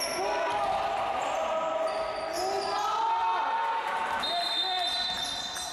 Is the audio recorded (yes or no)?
yes